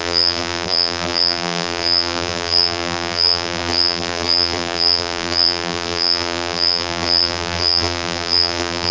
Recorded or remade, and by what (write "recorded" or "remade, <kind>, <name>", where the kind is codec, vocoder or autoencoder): remade, vocoder, BigVGAN v2